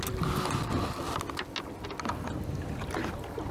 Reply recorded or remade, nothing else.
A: recorded